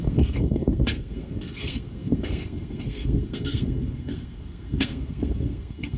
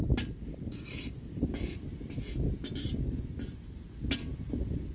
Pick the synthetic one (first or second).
first